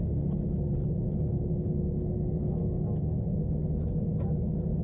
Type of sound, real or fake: real